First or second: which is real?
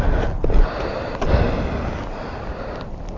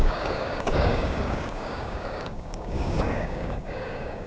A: first